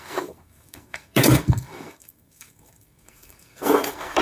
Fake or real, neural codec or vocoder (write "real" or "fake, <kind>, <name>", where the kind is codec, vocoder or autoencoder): fake, codec, SNAC